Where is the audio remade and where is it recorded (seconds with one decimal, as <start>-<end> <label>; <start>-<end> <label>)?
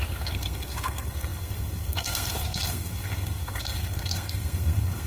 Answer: 0.0-5.1 remade